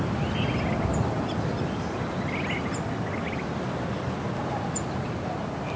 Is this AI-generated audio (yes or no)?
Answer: no